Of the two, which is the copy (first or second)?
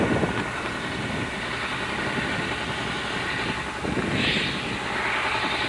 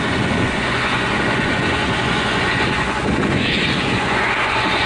second